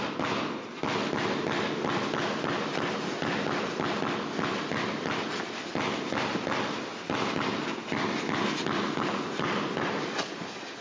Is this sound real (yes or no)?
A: yes